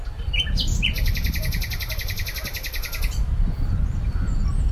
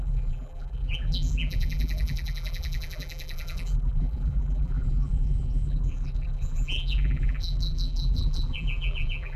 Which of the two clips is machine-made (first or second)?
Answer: second